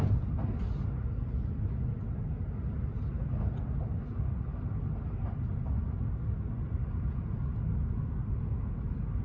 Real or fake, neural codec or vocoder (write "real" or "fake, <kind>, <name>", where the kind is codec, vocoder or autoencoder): real